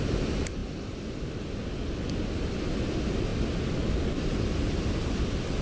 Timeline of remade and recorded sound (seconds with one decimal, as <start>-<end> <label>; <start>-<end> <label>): 0.0-5.6 recorded